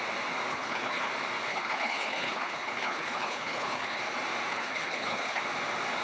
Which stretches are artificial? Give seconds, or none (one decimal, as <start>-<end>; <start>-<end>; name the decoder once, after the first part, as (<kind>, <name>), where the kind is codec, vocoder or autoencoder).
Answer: 0.5-1.1 (codec, HILCodec); 1.5-4.0; 4.5-5.4